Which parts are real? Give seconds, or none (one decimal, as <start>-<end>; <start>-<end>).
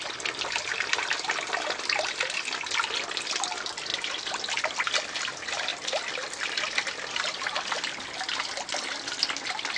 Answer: 0.0-5.7; 7.6-9.8